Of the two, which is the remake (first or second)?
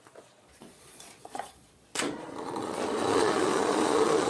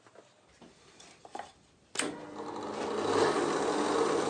first